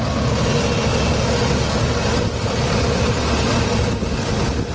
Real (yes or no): yes